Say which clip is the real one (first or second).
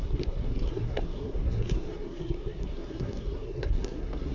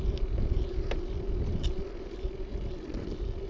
second